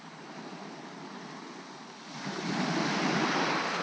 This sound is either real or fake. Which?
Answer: real